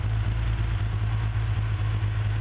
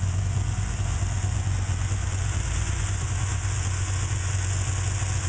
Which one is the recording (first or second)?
first